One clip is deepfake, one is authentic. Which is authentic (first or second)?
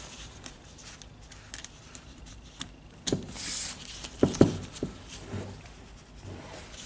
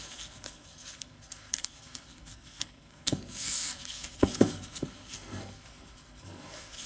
first